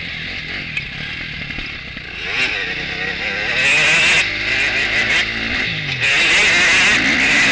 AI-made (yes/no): no